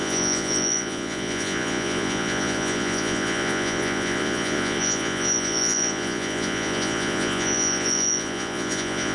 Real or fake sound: fake